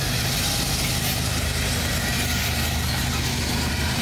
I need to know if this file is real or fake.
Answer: real